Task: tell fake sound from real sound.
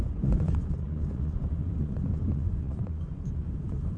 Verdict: fake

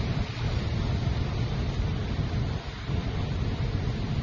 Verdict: real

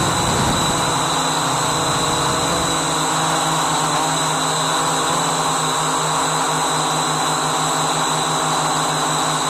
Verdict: real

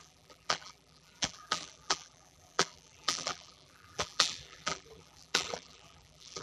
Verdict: fake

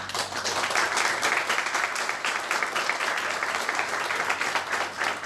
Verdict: real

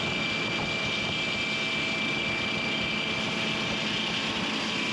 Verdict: real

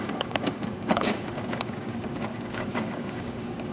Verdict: fake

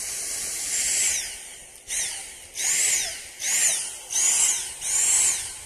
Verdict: real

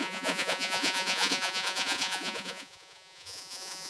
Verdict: fake